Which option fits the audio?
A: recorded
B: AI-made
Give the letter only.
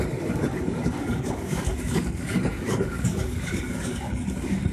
B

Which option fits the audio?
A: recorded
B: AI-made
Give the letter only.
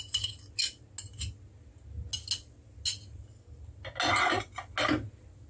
A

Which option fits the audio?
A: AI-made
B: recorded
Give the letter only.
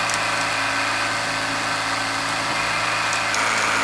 B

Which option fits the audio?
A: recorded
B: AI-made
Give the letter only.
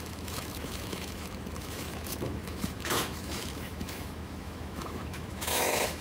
B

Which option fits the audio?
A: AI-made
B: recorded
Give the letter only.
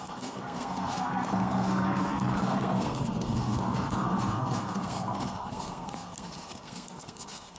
A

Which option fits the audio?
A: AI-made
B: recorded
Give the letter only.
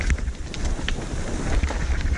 B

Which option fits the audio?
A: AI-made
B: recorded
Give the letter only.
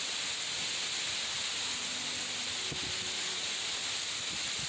B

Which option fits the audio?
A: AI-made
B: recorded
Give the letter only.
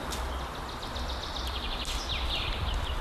B